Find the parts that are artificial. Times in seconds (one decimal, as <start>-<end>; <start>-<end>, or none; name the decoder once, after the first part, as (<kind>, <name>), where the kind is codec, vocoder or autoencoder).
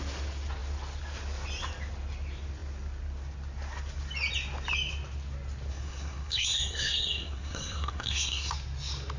5.7-8.5 (codec, SNAC)